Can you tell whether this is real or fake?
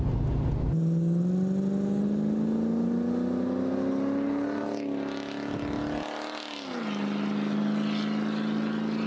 real